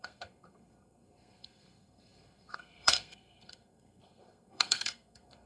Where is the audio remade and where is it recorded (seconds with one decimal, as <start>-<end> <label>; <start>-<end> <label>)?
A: 0.0-5.5 remade